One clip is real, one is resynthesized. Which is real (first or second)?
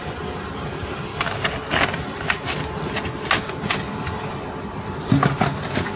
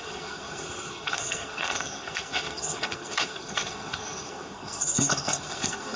first